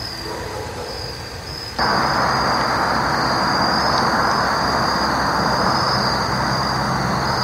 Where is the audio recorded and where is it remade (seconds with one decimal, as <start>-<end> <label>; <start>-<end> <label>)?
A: 0.0-7.4 recorded